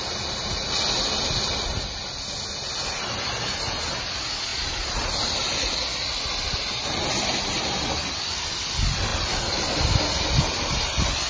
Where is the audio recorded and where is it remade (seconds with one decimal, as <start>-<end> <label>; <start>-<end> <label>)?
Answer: 0.0-11.3 recorded